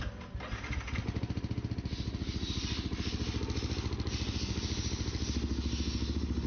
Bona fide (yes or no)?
yes